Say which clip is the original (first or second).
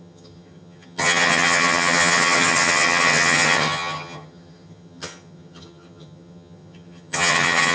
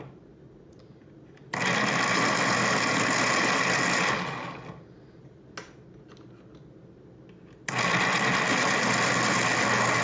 second